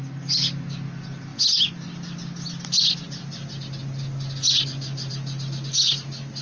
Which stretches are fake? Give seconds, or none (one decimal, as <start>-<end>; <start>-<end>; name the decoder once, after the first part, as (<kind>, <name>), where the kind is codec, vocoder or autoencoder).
none